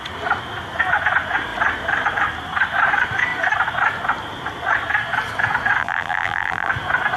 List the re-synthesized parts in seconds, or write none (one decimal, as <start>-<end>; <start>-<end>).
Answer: 5.8-6.7